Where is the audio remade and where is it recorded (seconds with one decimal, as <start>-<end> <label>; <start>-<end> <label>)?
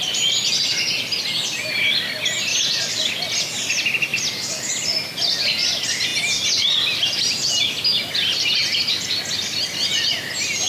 0.0-10.7 recorded